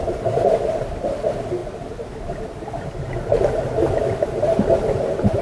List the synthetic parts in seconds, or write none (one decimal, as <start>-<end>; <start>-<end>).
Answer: none